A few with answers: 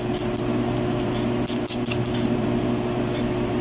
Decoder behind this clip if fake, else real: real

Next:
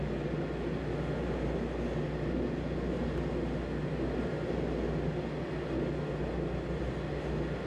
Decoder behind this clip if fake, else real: real